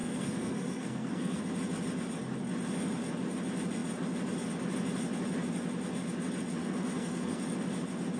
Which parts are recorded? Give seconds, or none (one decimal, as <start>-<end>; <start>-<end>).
1.4-6.6; 7.4-8.2